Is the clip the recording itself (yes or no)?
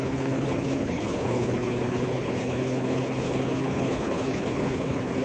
no